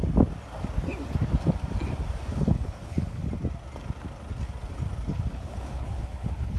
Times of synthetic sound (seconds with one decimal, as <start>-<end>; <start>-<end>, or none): 2.3-3.3; 5.1-6.6